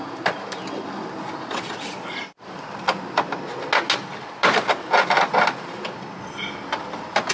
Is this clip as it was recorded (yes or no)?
yes